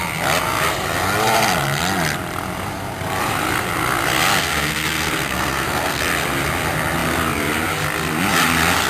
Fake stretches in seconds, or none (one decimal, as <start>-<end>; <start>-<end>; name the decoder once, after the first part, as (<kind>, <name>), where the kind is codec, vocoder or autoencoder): 4.4-6.0 (codec, SNAC)